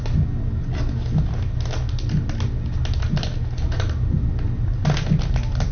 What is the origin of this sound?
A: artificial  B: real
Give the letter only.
B